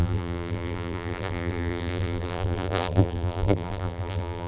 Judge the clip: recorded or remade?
remade